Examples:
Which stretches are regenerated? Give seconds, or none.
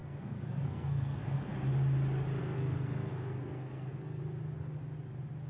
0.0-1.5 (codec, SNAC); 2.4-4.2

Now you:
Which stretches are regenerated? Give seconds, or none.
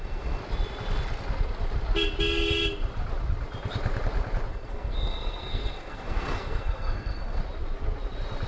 0.0-0.4 (codec, SNAC); 4.5-7.4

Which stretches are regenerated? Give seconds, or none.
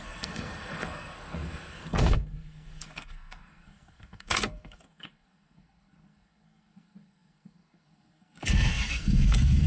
0.0-9.7 (codec, SNAC)